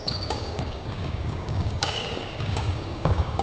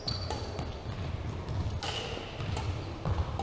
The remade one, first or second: first